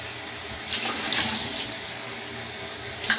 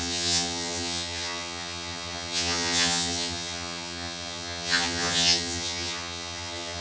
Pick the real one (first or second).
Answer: first